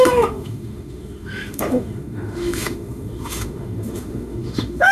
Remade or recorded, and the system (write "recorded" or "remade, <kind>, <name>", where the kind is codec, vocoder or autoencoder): remade, autoencoder, DAC-VAE